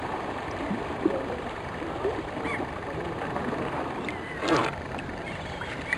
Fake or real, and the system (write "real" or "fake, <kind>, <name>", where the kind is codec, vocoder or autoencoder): fake, vocoder, BigVGAN v2